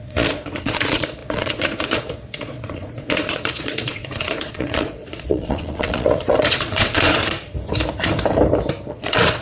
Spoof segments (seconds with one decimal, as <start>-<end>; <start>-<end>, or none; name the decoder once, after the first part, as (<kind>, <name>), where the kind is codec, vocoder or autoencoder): 0.0-7.2 (vocoder, Vocos); 8.9-9.4